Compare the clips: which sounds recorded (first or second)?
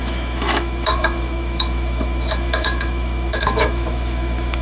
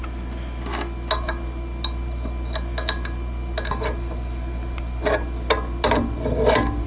second